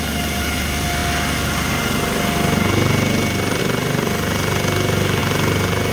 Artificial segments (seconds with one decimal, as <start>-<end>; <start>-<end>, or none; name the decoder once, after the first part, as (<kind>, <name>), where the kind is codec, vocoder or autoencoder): none